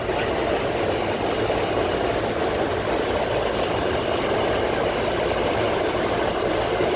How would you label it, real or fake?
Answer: real